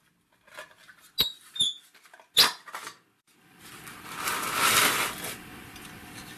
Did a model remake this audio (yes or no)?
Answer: no